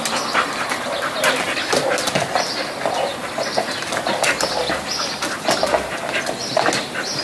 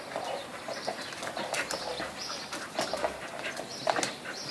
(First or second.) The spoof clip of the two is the second